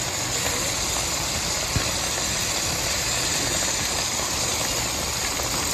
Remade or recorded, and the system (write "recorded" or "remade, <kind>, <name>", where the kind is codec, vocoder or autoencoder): recorded